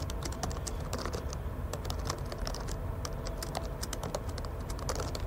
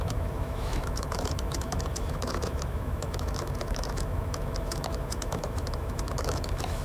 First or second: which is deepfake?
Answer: second